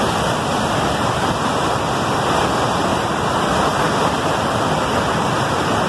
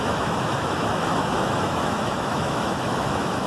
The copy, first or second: second